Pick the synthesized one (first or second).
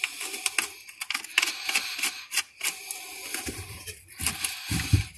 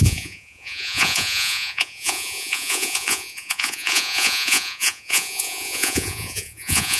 second